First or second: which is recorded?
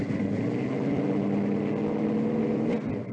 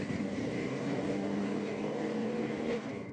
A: first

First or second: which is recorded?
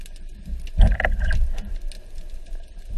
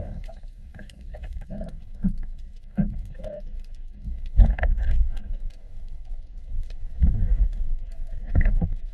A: first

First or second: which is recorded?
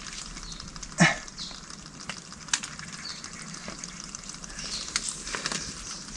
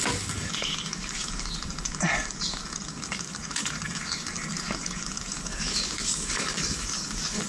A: first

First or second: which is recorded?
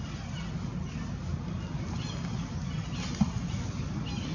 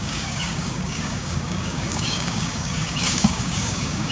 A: first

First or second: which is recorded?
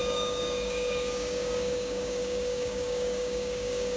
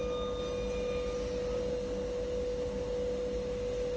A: second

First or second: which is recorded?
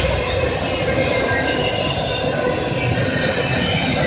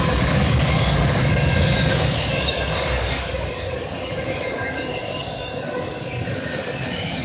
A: first